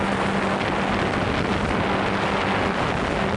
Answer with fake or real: real